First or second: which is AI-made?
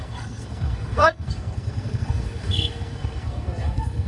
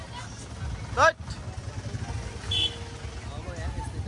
first